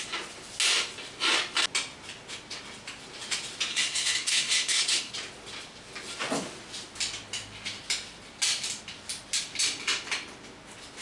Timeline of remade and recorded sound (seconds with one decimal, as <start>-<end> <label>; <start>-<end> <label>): 0.0-3.7 recorded; 3.7-5.1 remade; 5.1-11.0 recorded